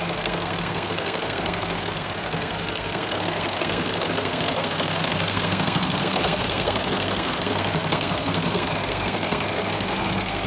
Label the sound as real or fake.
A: fake